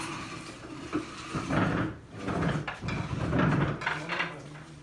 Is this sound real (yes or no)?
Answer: yes